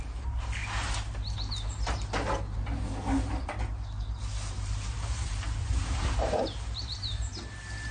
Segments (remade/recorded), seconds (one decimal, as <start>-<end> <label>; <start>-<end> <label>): 0.0-0.6 remade; 0.6-4.5 recorded; 4.5-7.9 remade